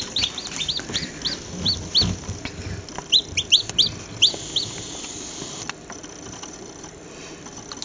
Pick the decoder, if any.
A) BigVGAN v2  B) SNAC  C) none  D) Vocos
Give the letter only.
C